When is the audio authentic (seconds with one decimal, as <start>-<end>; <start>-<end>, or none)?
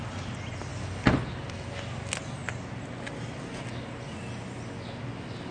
0.0-5.5